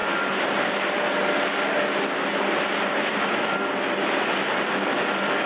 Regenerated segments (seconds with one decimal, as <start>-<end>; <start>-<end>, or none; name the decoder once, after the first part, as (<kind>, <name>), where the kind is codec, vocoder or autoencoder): none